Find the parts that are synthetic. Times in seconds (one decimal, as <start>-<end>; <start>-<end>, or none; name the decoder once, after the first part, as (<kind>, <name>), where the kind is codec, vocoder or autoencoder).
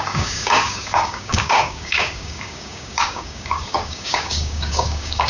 0.0-5.3 (codec, DAC)